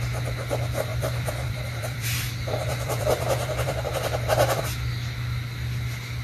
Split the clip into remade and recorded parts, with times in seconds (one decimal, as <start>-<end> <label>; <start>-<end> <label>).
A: 0.0-0.9 recorded; 0.9-4.6 remade; 4.6-6.2 recorded